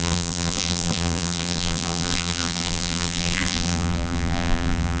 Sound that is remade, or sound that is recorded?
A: remade